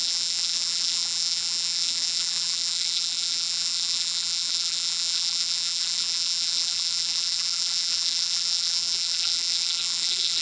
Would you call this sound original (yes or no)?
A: no